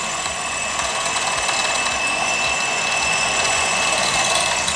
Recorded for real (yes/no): no